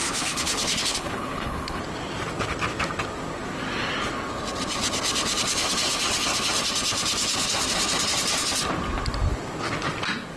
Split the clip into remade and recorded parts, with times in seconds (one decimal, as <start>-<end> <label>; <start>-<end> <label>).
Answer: 0.0-1.8 remade; 1.8-10.4 recorded